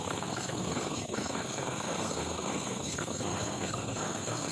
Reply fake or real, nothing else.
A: fake